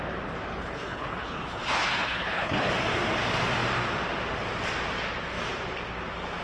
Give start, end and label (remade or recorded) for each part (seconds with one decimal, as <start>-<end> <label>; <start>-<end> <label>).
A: 0.0-0.5 recorded; 0.5-2.7 remade; 2.7-6.4 recorded